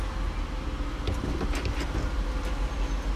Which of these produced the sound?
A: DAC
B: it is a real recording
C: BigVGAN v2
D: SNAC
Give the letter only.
B